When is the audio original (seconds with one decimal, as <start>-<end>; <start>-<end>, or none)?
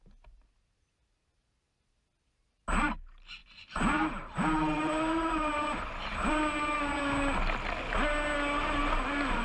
0.0-3.4; 6.3-9.4